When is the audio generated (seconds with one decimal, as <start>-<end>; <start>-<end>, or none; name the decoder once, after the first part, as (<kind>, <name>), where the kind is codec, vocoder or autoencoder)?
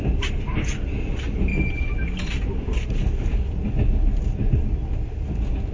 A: none